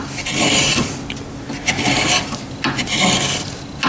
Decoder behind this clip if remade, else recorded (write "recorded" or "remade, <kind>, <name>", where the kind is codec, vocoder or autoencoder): recorded